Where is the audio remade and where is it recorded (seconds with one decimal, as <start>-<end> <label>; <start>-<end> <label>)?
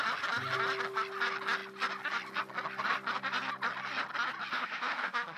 0.0-4.5 recorded; 4.5-5.4 remade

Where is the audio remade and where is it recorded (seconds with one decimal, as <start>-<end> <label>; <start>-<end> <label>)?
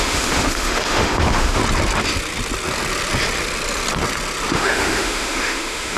0.0-1.6 remade; 1.6-4.5 recorded; 4.5-6.0 remade